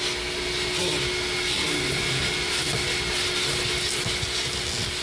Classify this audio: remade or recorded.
recorded